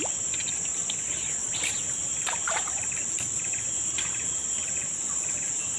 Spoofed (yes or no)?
yes